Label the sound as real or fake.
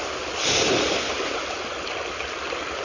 real